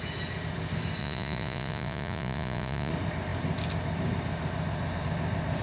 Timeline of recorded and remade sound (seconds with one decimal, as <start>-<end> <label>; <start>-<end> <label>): 0.0-1.0 recorded; 1.0-2.9 remade; 2.9-5.6 recorded